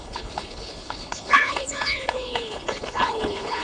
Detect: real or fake fake